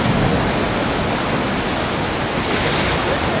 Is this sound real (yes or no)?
yes